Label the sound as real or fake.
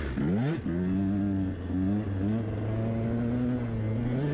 real